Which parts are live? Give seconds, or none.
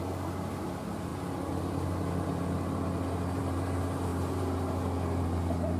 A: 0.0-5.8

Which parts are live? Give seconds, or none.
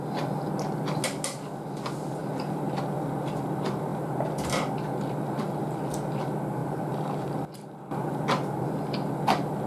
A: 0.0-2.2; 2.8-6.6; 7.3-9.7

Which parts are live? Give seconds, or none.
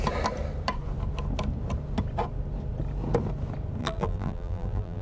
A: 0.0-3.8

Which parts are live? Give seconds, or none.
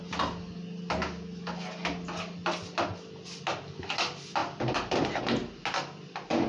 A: 0.0-4.4; 5.0-6.5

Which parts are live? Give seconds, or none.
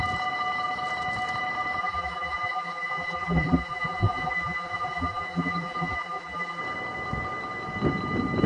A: 0.0-1.8; 6.6-8.5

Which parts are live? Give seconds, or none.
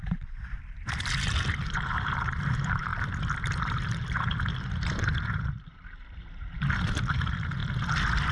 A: 7.6-8.3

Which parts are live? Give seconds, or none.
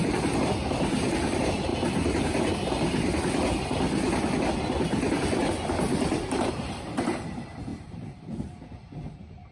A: 1.7-6.5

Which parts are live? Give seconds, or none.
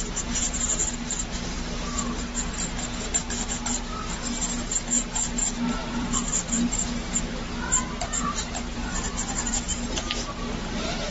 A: 0.0-5.8; 10.2-11.1